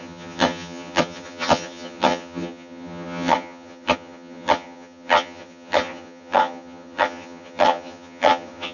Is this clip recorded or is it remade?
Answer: remade